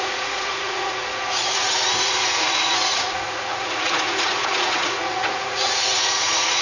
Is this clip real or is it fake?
fake